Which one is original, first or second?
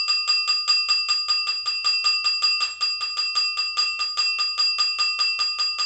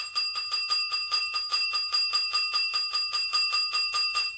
first